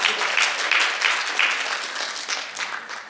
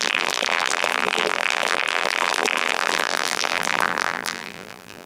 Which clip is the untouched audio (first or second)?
first